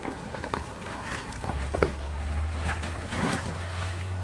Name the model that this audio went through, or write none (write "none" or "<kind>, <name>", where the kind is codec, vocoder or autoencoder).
codec, SNAC